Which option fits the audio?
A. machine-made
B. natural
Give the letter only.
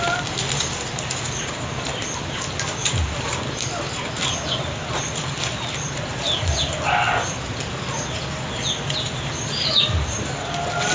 B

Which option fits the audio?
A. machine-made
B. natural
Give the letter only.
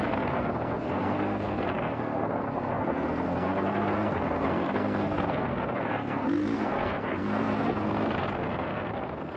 A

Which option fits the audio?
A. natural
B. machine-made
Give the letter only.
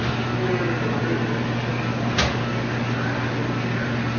A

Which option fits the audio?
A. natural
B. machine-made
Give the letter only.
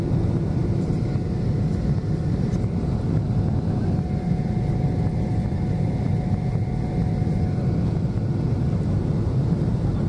A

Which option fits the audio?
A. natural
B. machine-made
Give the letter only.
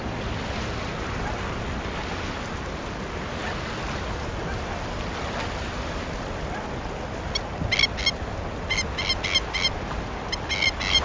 A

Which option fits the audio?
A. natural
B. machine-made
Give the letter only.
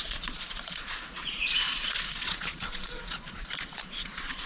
B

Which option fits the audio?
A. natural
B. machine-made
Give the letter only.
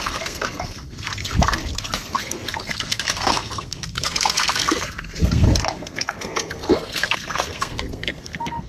B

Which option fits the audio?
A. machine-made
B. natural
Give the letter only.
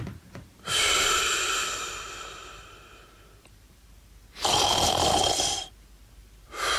A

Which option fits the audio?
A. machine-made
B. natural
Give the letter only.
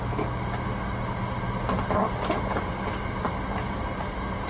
B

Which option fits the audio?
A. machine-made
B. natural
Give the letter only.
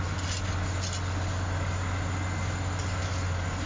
B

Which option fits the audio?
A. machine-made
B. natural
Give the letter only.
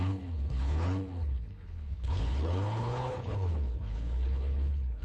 A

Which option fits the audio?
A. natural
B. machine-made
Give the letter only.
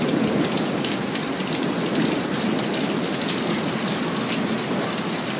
A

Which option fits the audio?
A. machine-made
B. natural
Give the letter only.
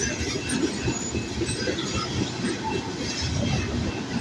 B